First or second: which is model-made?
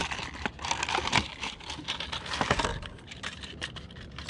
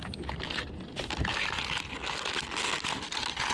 first